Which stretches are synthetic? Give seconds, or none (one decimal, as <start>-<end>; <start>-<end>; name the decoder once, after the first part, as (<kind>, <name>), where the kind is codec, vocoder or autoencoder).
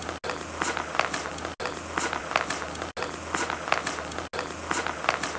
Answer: none